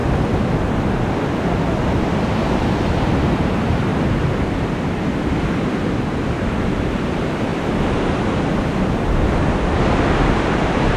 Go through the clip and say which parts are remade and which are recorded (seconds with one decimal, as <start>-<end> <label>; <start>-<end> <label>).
0.0-2.2 recorded; 2.2-3.9 remade; 3.9-7.0 recorded; 7.0-7.5 remade; 7.5-10.3 recorded; 10.3-11.0 remade